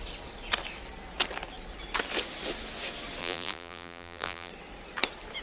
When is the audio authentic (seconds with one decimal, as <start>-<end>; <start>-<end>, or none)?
0.0-3.2; 4.5-5.4